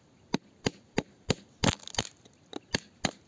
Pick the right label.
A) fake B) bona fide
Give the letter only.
B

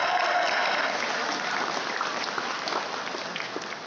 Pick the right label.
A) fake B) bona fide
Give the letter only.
B